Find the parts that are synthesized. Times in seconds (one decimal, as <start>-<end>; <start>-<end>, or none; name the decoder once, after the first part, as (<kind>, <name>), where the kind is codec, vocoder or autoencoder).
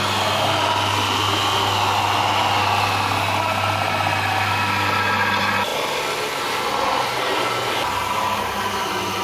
none